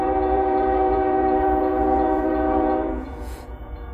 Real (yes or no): no